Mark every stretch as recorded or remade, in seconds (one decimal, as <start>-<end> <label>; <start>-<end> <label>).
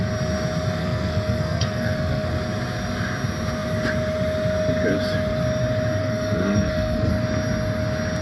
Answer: 0.0-0.8 recorded; 0.8-2.3 remade; 2.3-6.0 recorded; 6.0-7.1 remade; 7.1-8.2 recorded